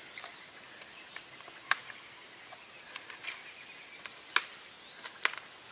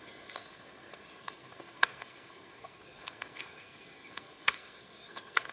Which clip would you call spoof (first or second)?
second